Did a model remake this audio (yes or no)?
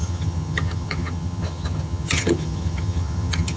yes